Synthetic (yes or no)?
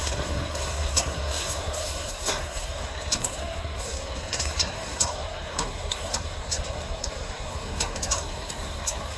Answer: yes